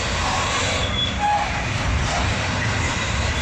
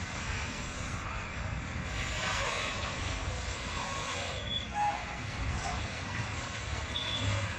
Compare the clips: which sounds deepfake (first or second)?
second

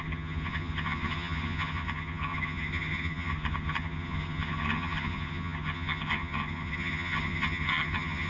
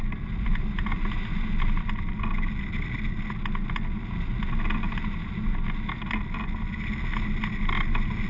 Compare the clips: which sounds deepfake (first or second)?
first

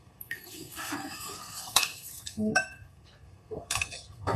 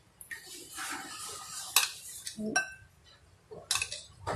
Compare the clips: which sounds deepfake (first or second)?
first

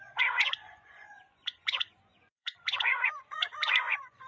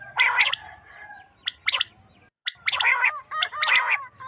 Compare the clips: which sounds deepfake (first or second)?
first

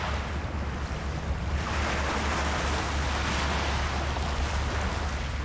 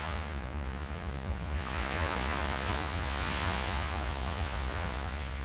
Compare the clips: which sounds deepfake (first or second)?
second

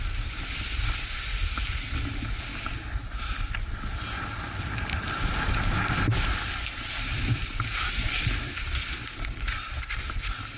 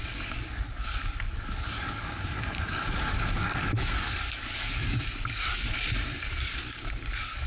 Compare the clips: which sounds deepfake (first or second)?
second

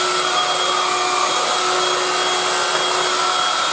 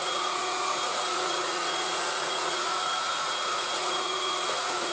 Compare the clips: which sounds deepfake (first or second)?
second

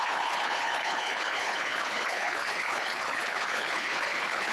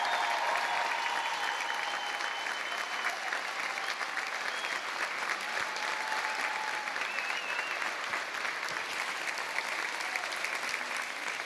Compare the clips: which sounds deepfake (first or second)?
first